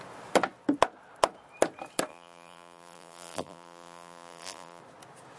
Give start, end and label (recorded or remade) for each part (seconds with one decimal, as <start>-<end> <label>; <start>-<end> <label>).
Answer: 0.0-2.1 recorded; 2.1-4.8 remade; 4.8-5.4 recorded